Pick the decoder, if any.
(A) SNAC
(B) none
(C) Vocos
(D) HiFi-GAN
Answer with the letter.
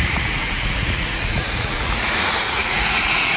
C